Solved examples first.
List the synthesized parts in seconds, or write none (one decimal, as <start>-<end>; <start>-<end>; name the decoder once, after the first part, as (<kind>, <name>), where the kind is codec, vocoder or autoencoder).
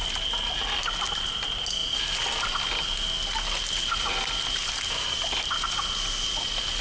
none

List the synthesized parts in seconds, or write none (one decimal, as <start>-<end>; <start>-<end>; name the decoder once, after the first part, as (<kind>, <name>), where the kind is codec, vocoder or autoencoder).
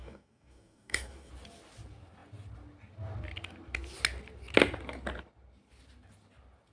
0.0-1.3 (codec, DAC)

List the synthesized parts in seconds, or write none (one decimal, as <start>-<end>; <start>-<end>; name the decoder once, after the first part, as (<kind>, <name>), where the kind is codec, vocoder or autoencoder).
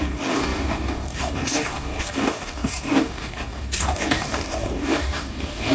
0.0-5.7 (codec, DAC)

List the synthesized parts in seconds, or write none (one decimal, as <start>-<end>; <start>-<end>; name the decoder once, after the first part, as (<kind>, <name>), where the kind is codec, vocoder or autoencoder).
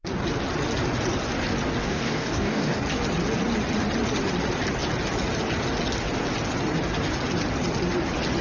1.8-2.8 (codec, DAC)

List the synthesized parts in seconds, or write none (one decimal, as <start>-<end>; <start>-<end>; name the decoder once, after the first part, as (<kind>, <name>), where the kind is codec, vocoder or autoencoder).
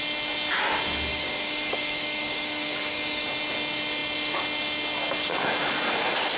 1.1-3.2 (codec, DAC)